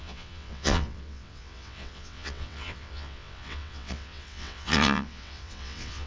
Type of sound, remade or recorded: remade